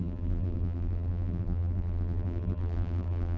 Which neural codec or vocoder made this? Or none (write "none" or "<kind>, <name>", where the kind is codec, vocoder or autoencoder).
vocoder, BigVGAN v2